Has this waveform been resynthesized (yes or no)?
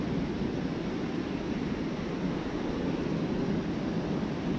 no